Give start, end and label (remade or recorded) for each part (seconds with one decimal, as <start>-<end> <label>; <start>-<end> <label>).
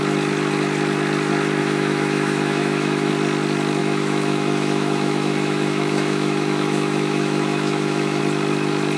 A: 0.0-1.6 recorded; 1.6-3.1 remade; 3.1-3.8 recorded; 3.8-8.2 remade; 8.2-9.0 recorded